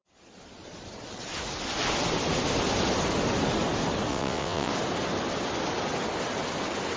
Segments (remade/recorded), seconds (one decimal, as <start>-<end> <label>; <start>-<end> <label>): 0.0-4.1 recorded; 4.1-4.7 remade; 4.7-7.0 recorded